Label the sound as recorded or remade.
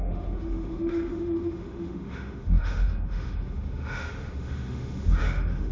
remade